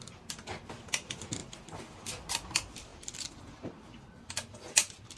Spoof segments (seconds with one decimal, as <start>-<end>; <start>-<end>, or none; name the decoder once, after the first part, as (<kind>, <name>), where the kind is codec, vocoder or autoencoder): 2.9-3.9 (vocoder, BigVGAN v2)